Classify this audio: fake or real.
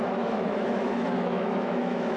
fake